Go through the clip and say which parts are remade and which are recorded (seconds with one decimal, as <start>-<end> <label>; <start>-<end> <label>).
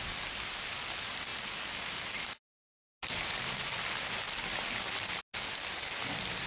0.0-6.5 recorded